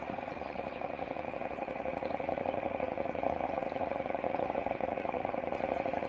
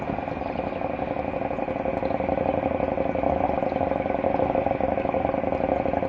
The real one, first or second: second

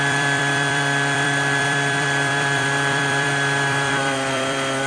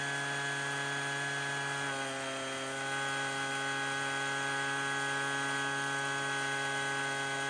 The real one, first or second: second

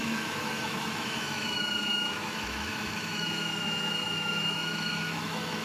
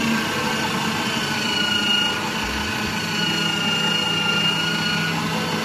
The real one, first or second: second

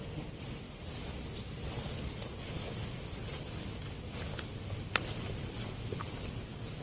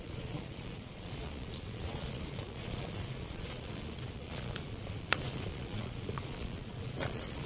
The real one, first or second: first